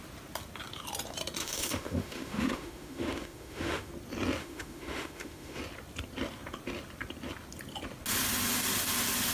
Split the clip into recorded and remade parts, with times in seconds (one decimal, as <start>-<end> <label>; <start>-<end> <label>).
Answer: 0.0-1.4 recorded; 1.4-3.9 remade; 3.9-4.4 recorded; 4.4-5.6 remade; 5.6-9.3 recorded